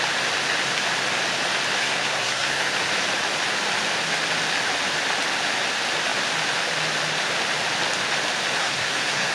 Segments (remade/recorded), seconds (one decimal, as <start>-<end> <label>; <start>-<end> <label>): 0.0-1.8 recorded; 1.8-2.7 remade; 2.7-8.6 recorded; 8.6-9.3 remade